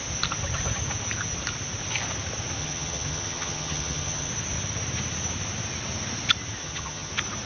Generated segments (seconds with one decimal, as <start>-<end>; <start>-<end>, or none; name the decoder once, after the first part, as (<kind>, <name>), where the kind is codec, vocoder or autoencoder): 2.6-4.3 (vocoder, HiFi-GAN); 6.6-7.1

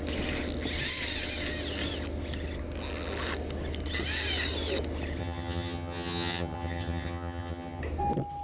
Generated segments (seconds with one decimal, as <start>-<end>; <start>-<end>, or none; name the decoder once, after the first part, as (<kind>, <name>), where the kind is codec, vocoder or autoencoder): 5.2-7.8 (vocoder, HiFi-GAN)